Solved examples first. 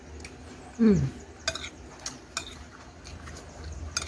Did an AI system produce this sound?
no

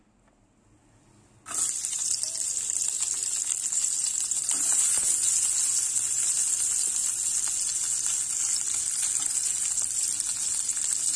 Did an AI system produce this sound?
no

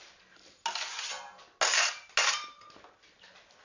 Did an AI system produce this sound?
no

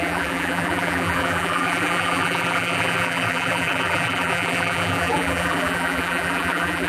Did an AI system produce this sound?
yes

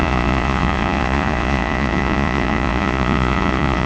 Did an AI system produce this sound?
yes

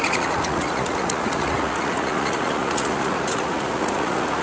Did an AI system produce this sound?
yes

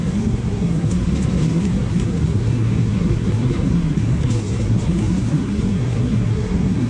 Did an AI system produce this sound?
yes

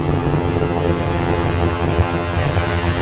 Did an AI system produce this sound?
yes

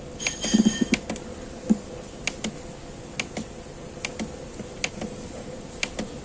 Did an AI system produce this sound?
no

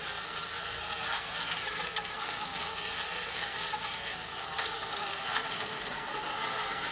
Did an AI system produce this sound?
yes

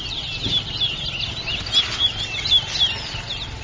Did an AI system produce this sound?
no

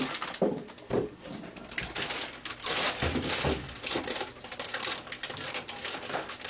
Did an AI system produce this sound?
yes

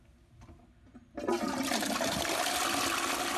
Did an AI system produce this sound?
no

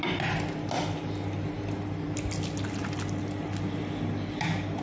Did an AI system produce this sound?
no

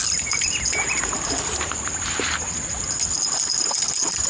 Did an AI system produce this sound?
no